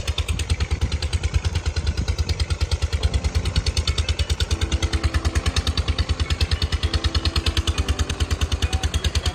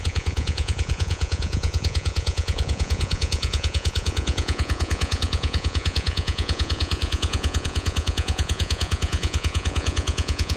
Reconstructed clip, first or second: second